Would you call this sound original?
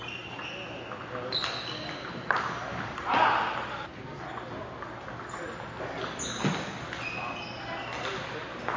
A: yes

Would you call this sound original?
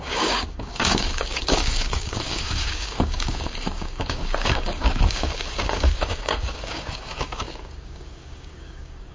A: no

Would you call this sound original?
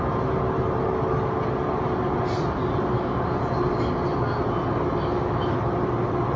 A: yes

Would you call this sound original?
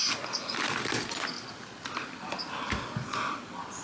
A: yes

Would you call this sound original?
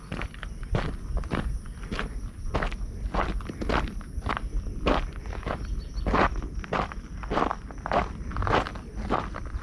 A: yes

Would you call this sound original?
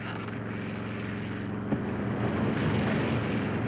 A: yes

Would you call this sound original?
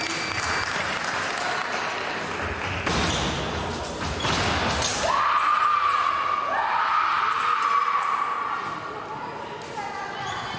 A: yes